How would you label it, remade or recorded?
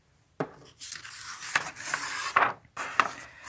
recorded